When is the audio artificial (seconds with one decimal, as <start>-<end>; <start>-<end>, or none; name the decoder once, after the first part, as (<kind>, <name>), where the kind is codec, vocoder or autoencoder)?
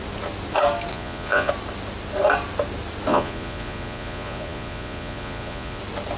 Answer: 0.9-1.5 (vocoder, Vocos); 3.1-5.8